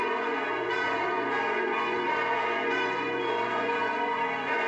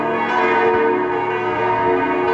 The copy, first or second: first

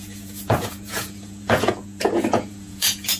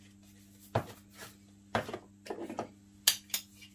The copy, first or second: first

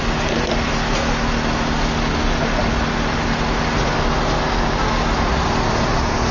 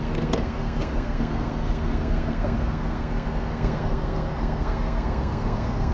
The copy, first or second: second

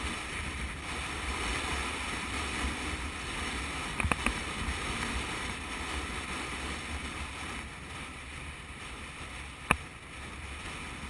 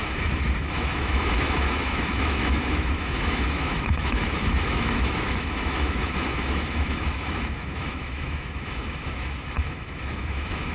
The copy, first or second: second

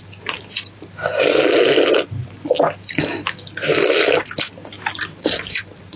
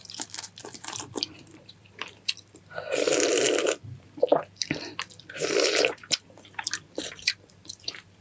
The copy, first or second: second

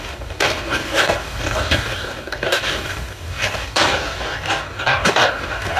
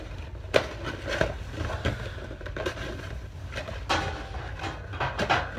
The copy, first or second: first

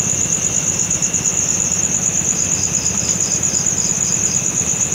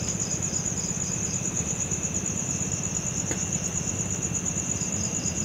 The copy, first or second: second